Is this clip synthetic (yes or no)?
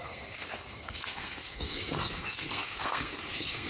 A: yes